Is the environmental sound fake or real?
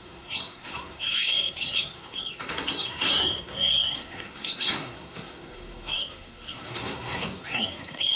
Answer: fake